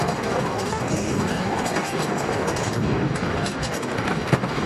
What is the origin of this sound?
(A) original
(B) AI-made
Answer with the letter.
B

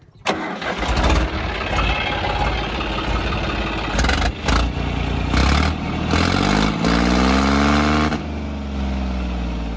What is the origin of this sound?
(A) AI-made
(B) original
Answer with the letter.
B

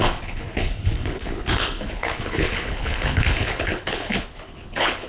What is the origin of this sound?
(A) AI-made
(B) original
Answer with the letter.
A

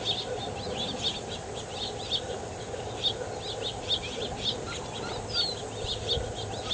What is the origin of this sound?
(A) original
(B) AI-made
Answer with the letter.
A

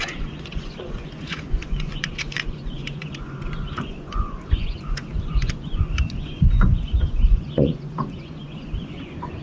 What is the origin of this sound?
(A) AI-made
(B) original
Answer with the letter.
A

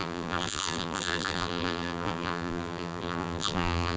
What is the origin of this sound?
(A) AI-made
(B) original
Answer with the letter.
A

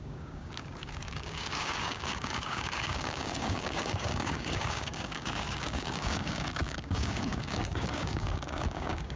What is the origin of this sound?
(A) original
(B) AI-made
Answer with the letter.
B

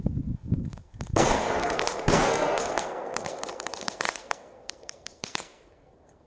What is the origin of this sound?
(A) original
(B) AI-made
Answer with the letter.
B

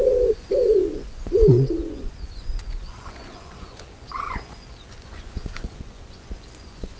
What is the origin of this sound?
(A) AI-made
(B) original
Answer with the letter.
A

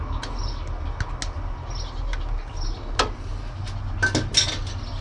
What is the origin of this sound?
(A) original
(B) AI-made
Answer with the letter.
A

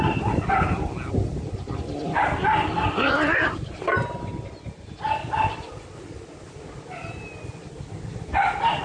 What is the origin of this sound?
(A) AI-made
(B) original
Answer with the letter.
B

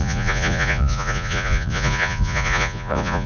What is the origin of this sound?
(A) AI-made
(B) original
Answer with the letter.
A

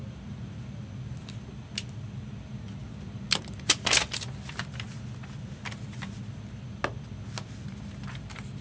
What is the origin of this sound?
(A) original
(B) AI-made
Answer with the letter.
A